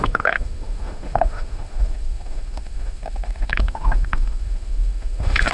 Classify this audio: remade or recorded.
remade